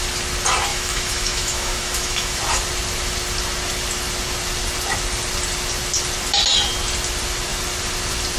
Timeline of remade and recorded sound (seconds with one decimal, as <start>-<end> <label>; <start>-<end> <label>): 0.0-0.7 recorded; 0.7-2.4 remade; 2.4-8.4 recorded